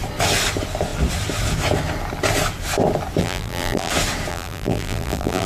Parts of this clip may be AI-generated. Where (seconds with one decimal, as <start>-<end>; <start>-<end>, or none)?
3.2-3.9; 4.3-5.5

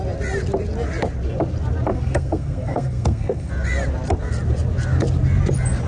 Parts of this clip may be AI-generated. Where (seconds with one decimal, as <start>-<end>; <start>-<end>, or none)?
1.9-3.5